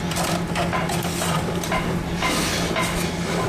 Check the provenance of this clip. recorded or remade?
recorded